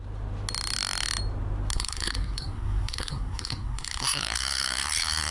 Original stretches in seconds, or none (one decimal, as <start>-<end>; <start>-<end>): 0.0-1.7